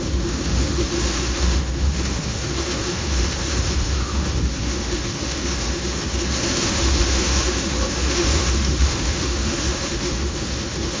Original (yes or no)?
no